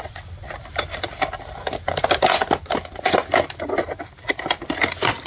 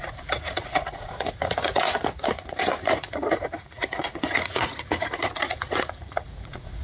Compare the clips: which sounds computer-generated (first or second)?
second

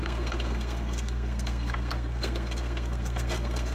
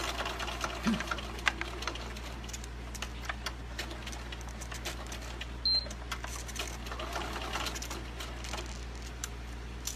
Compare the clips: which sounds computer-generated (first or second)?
first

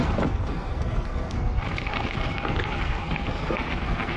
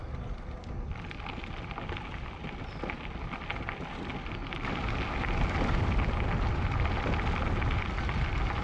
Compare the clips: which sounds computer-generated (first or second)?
first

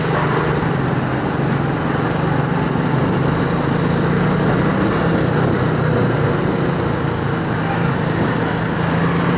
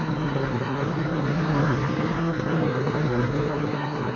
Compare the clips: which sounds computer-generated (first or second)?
second